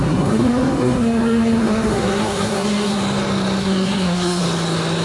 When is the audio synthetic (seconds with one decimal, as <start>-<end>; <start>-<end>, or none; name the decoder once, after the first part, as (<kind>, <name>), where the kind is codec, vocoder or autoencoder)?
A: 0.0-3.0 (codec, SNAC); 3.6-4.4